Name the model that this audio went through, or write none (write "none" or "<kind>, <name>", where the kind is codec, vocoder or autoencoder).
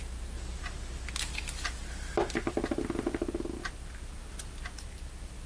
none